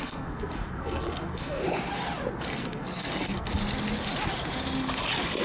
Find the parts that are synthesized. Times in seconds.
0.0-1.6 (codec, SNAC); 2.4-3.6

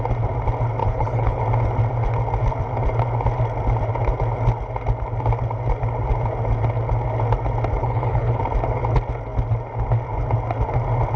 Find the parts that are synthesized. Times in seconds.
0.8-1.4 (codec, HILCodec); 7.8-8.4